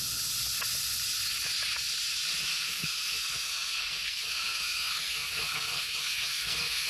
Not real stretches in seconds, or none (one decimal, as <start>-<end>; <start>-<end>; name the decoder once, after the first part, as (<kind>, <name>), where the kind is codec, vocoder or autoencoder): 2.5-6.9 (codec, SNAC)